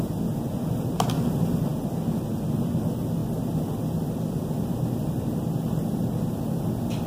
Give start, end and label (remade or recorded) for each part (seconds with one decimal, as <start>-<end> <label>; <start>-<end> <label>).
0.0-7.1 recorded